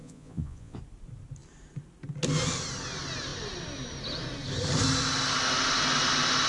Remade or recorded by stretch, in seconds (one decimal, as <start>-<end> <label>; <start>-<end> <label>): 0.0-0.8 remade; 0.8-6.5 recorded